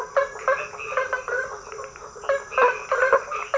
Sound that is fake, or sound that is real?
real